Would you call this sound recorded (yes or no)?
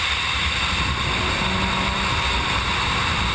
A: yes